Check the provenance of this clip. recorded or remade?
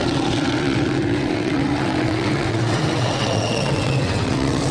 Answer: remade